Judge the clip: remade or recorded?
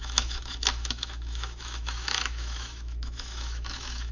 remade